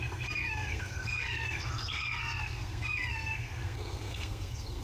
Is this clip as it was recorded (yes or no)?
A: no